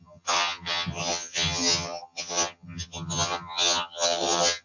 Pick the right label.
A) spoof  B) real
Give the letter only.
A